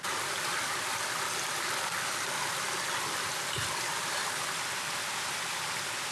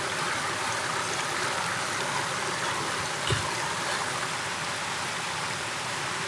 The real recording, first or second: second